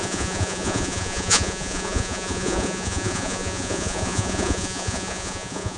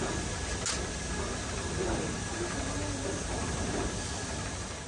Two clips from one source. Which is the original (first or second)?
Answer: second